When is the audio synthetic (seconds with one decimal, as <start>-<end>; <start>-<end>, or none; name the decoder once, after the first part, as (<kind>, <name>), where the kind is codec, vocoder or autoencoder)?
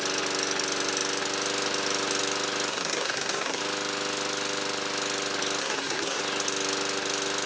2.7-3.6 (codec, SNAC); 5.6-6.2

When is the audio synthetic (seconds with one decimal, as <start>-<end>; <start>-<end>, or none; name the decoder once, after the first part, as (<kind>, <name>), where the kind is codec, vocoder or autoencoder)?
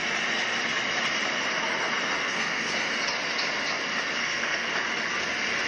2.2-2.9 (codec, SNAC); 4.2-4.7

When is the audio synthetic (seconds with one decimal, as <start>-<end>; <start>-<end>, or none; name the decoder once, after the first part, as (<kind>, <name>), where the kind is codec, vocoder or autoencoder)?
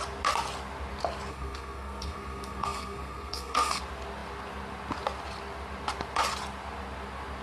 1.3-3.8 (codec, SNAC)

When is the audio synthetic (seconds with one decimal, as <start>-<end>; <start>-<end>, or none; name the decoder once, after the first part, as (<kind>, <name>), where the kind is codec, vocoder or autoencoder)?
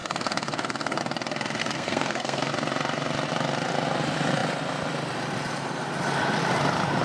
0.0-1.0 (codec, SNAC); 1.6-2.5